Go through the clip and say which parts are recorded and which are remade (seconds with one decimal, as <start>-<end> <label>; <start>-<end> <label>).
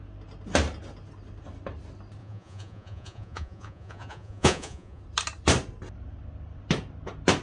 0.0-2.2 recorded; 2.2-5.0 remade; 5.0-7.4 recorded